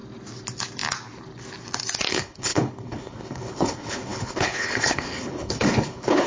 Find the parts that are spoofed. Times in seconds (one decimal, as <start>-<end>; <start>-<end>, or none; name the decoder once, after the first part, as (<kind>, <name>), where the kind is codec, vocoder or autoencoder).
2.1-6.3 (codec, HILCodec)